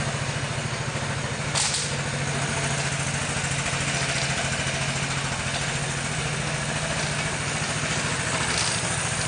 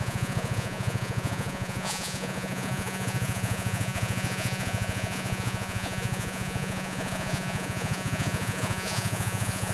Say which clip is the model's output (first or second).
second